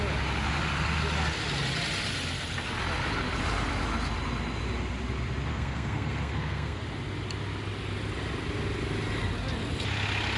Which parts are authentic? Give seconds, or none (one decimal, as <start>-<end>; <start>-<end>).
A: 0.0-5.5; 6.8-10.4

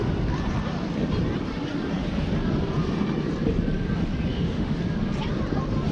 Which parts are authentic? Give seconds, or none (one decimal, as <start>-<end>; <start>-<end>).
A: 0.0-4.3; 4.8-5.9

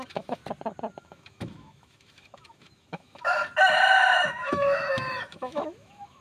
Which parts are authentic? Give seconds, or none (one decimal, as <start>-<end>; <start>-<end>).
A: 0.4-1.0; 3.4-3.9